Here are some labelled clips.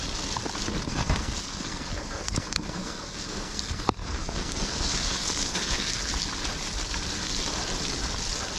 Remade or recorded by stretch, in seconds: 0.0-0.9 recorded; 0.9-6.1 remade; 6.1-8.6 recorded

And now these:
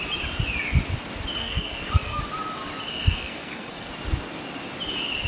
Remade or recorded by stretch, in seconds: 0.0-1.4 recorded; 1.4-2.2 remade; 2.2-2.9 recorded; 2.9-3.9 remade; 3.9-5.3 recorded